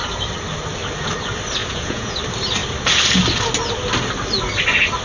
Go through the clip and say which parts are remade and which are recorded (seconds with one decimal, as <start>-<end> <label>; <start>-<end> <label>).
0.0-1.6 recorded; 1.6-2.2 remade; 2.2-5.0 recorded